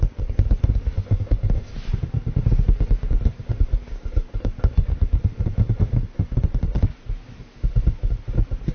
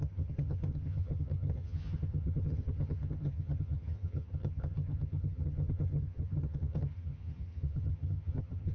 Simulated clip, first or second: second